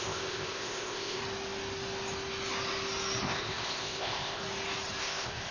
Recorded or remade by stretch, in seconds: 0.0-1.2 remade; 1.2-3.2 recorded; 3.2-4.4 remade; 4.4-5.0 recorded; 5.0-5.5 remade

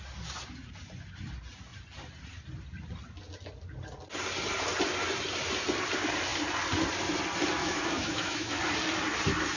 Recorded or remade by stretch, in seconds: 0.0-7.6 recorded; 7.6-8.5 remade; 8.5-9.6 recorded

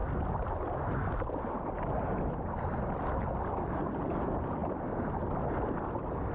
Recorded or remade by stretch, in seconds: 0.0-6.3 recorded

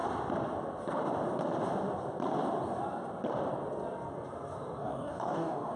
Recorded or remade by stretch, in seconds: 0.0-4.8 recorded; 4.8-5.8 remade

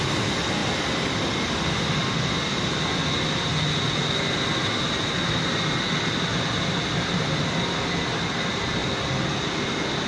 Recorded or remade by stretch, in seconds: 0.0-10.1 recorded

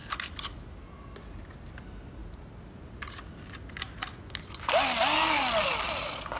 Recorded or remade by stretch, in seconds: 0.0-6.4 recorded

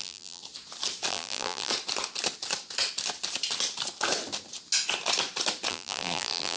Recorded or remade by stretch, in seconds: 0.0-0.4 remade; 0.4-1.1 recorded; 1.1-1.7 remade; 1.7-5.7 recorded; 5.7-6.6 remade